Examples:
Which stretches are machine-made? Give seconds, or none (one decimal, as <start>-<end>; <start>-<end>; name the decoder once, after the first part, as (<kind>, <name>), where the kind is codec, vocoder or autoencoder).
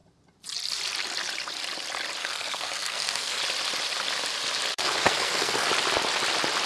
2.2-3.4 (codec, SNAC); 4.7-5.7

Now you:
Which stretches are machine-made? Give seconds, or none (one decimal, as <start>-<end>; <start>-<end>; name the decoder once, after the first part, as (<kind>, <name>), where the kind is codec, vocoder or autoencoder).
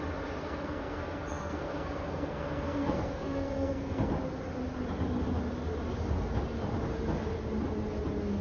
0.4-4.1 (codec, SNAC)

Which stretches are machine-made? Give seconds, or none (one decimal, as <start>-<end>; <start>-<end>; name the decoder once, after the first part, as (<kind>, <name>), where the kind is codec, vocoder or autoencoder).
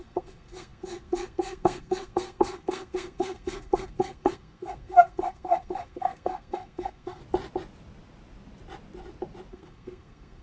0.0-7.2 (codec, SNAC); 9.5-10.4